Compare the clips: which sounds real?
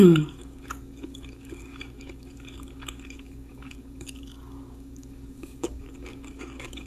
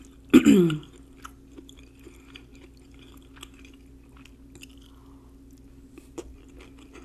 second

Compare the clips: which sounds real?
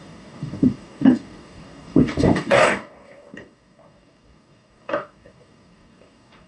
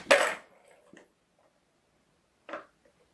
second